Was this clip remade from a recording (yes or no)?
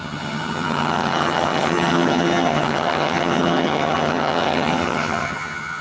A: yes